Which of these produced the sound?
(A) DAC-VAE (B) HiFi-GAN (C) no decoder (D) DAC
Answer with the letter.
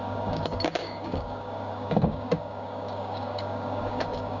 D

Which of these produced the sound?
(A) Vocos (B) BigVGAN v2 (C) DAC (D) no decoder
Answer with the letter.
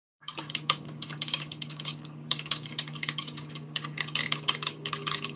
C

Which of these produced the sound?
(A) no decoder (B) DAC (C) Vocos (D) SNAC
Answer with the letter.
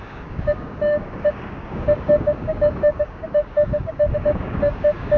B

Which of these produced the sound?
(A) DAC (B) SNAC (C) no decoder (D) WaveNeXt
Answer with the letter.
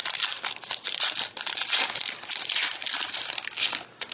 C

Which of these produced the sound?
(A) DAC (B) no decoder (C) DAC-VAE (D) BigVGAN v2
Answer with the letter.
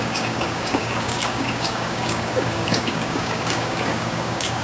A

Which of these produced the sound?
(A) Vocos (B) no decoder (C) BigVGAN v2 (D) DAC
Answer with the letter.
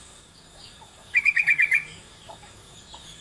D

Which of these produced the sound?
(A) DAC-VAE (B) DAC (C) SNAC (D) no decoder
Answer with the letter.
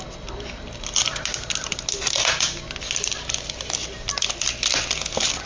D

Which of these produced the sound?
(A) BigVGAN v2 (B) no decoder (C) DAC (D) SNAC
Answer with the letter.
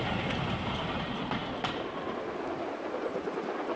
B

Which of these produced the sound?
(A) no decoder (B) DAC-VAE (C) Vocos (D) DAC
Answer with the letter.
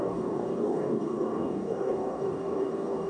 D